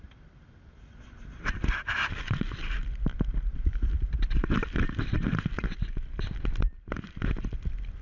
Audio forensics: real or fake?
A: fake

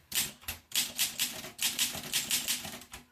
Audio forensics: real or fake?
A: real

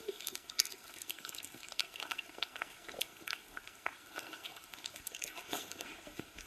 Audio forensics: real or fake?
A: fake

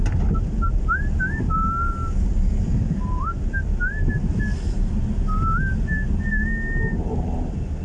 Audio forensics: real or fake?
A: real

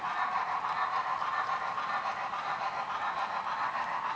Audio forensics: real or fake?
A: real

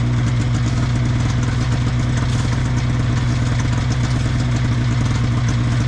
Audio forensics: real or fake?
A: real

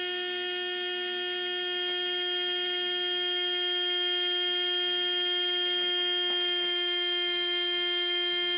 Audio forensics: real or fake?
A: fake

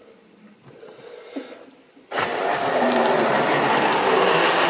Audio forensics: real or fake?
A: real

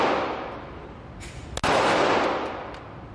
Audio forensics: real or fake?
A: real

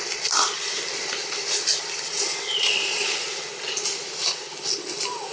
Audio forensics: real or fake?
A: real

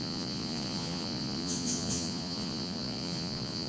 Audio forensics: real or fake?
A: fake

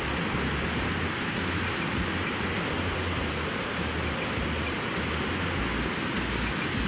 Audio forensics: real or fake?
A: real